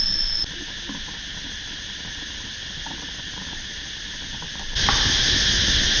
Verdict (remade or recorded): recorded